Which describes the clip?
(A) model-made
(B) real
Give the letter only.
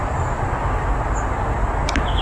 B